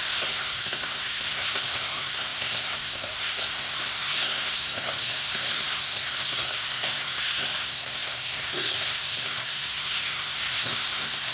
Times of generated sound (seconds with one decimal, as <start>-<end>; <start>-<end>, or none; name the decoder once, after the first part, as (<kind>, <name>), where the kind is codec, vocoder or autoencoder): 0.0-11.3 (codec, SNAC)